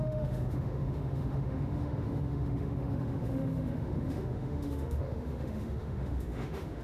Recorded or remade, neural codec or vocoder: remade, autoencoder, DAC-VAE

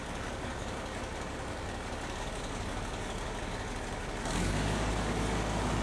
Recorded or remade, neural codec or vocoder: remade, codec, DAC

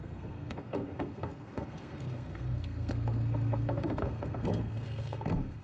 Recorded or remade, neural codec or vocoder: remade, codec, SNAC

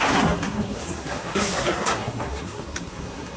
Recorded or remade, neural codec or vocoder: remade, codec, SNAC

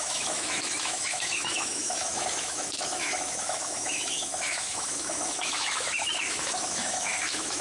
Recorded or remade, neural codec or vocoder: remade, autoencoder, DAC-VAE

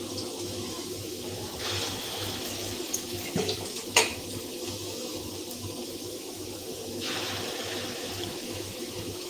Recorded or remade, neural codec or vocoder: remade, autoencoder, DAC-VAE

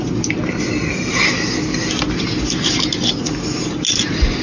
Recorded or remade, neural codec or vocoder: recorded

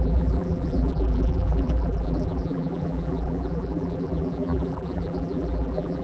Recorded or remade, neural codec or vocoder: remade, vocoder, BigVGAN v2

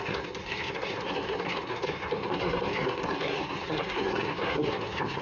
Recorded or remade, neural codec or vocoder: remade, codec, SNAC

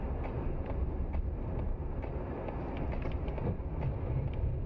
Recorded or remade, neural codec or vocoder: recorded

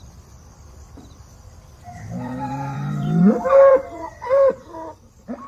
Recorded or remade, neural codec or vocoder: remade, vocoder, BigVGAN v2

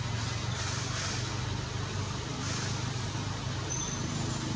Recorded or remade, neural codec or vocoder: recorded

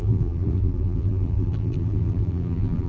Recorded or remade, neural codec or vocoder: remade, vocoder, BigVGAN v2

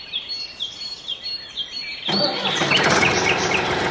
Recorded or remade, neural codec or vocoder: remade, vocoder, BigVGAN v2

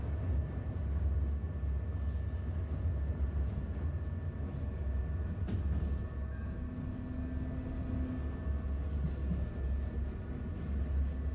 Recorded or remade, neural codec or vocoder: recorded